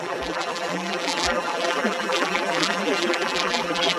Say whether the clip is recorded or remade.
remade